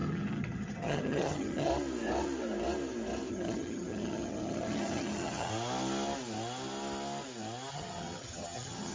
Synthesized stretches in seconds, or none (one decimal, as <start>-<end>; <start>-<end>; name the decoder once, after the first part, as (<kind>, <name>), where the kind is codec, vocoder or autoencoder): 0.0-1.7 (vocoder, HiFi-GAN); 3.3-5.5; 7.7-8.9